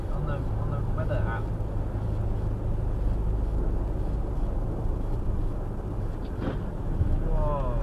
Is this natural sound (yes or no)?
yes